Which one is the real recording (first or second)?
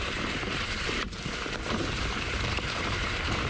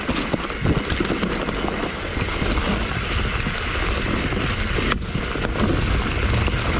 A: second